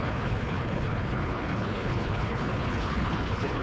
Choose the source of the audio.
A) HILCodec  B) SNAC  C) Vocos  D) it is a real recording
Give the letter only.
A